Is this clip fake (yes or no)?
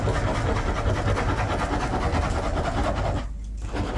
no